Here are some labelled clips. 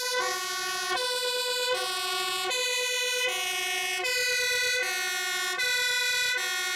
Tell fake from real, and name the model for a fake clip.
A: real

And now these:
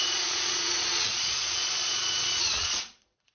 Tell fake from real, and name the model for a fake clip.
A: fake, vocoder, Vocos